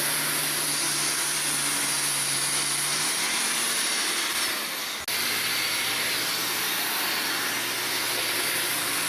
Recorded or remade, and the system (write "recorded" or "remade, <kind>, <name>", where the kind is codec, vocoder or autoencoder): recorded